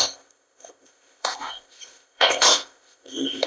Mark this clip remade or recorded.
remade